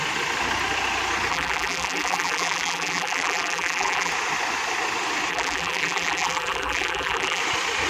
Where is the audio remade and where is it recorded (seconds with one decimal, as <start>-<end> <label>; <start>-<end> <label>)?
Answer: 0.0-1.3 recorded; 1.3-4.1 remade; 4.1-5.3 recorded; 5.3-7.4 remade; 7.4-7.9 recorded